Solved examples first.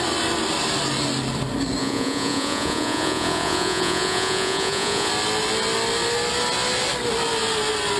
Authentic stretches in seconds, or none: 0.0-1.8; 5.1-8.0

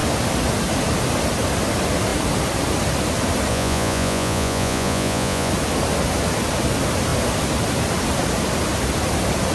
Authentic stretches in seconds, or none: 0.0-3.5; 5.5-9.5

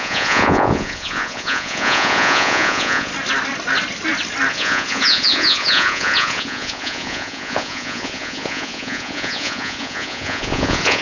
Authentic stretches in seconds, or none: 3.1-4.5

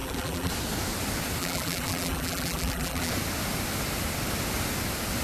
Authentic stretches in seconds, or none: 0.5-1.4; 3.1-5.2

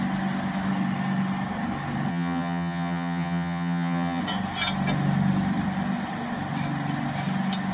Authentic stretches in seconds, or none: 0.0-2.1; 4.2-7.7

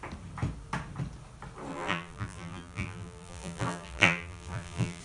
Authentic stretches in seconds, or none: 0.0-1.7

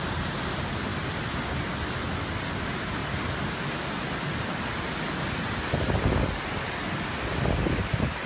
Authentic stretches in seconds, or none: 0.0-8.3